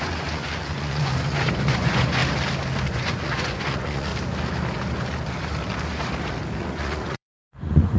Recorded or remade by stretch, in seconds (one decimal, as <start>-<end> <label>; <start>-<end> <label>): 0.0-2.2 remade; 2.2-2.8 recorded; 2.8-4.1 remade; 4.1-6.6 recorded; 6.6-8.0 remade